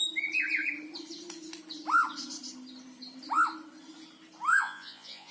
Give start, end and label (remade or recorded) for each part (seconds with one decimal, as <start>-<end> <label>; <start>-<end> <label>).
0.0-4.5 recorded; 4.5-5.3 remade